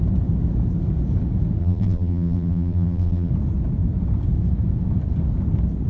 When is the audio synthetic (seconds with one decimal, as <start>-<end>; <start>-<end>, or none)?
1.6-3.3